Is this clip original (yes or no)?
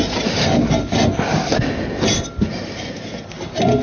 yes